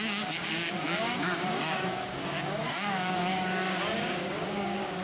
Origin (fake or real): fake